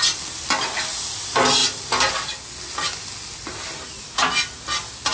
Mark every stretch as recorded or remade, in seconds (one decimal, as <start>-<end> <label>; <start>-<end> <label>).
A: 0.0-5.1 recorded